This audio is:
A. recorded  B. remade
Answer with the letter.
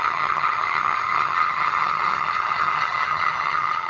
B